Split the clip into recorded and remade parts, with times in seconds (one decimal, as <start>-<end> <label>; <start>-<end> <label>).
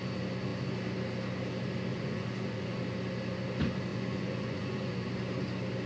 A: 0.0-1.9 recorded; 1.9-2.8 remade; 2.8-3.9 recorded; 3.9-4.9 remade; 4.9-5.9 recorded